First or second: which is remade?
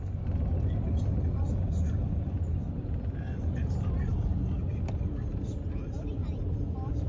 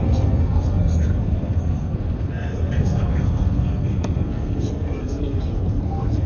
second